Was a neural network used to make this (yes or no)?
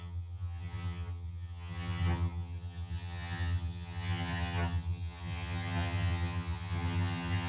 yes